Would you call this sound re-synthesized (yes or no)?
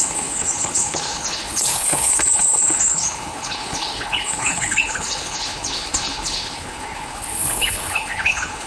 yes